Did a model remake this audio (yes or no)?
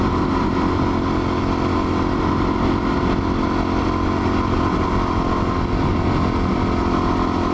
no